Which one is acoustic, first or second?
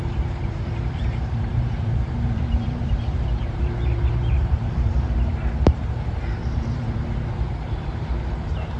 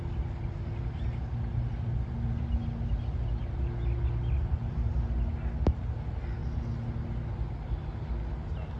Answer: second